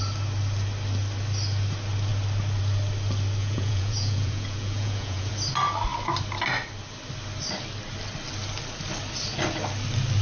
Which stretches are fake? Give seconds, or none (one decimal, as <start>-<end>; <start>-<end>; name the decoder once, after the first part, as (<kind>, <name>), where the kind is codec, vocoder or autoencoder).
3.4-5.3 (vocoder, Vocos)